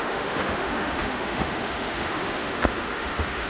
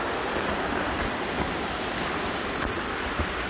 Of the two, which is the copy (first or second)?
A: first